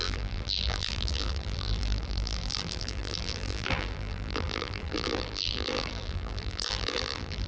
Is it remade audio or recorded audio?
remade